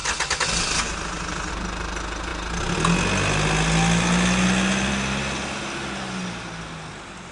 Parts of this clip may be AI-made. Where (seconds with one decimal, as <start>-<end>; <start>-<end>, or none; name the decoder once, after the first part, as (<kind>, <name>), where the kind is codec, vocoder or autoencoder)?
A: none